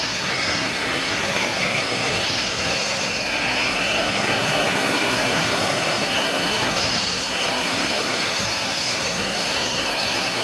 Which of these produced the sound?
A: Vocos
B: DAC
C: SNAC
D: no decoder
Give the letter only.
C